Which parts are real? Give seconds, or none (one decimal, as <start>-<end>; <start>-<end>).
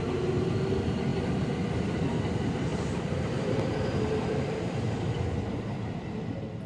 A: 0.0-2.7; 6.3-6.7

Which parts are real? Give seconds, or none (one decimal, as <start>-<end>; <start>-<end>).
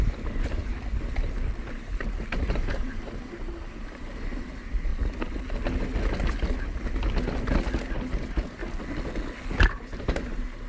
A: 0.6-1.6; 4.9-8.0; 8.6-9.6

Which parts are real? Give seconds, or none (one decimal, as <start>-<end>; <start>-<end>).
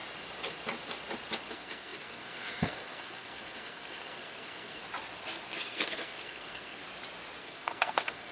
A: 0.0-1.5; 4.8-5.5; 6.8-7.4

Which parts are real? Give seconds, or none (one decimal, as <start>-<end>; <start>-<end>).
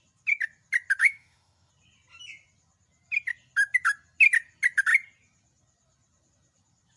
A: 0.0-1.0; 1.7-7.0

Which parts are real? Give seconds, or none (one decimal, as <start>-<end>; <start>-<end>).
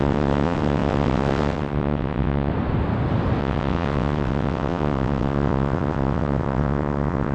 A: 2.5-3.4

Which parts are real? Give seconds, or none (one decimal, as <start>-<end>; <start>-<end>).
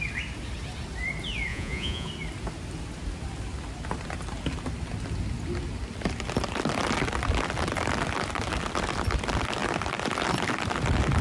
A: 0.0-1.5; 2.1-11.2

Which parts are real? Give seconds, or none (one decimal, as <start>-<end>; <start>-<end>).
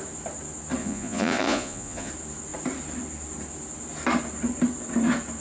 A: 0.0-0.8; 2.1-5.4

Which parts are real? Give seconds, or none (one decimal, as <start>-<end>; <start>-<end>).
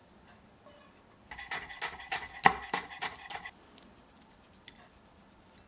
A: 0.0-5.7